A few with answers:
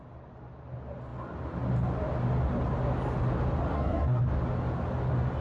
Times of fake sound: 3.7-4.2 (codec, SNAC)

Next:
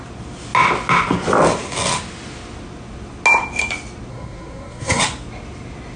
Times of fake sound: 4.1-5.0 (codec, SNAC)

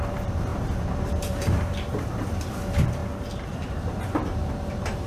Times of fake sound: 0.0-3.0 (vocoder, BigVGAN v2); 3.5-5.1

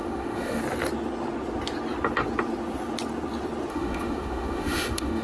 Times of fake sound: 0.0-0.6 (autoencoder, DAC-VAE); 3.7-5.2

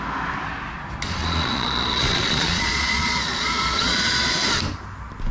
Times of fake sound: 1.2-4.4 (vocoder, Vocos)

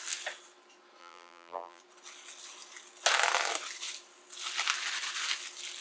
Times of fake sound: 1.0-1.8 (vocoder, BigVGAN v2)

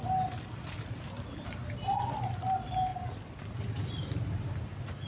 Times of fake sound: none